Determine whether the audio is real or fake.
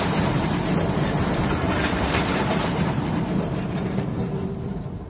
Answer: fake